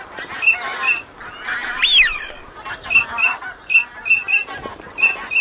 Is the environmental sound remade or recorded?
recorded